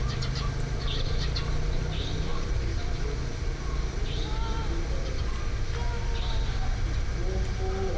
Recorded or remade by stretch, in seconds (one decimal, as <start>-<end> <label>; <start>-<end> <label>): 0.0-8.0 recorded